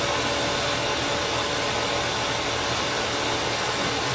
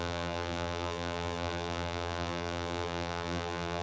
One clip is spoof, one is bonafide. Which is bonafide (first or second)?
first